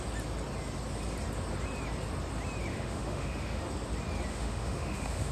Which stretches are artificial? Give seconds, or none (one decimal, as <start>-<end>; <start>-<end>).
2.7-3.6; 4.3-5.3